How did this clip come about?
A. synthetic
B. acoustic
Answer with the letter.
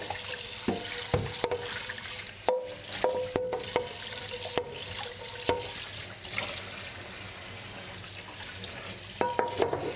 B